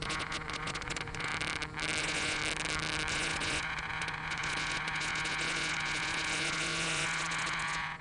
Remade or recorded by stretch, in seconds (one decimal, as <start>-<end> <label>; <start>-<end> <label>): 0.0-1.3 remade; 1.3-2.0 recorded; 2.0-2.4 remade; 2.4-3.1 recorded; 3.1-8.0 remade